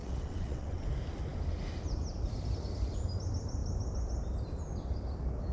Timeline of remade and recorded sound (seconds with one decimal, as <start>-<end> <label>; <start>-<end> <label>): 0.0-0.9 remade; 0.9-5.5 recorded